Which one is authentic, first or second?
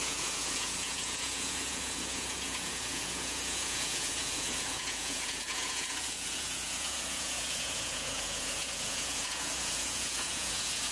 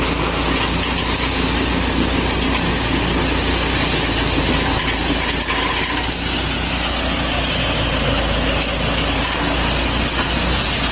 second